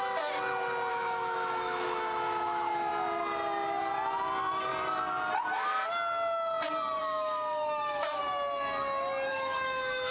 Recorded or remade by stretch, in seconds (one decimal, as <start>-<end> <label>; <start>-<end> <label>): 0.0-0.9 recorded; 0.9-2.9 remade; 2.9-7.0 recorded; 7.0-8.2 remade; 8.2-9.3 recorded; 9.3-10.1 remade